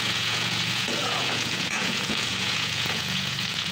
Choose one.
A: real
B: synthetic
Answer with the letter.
B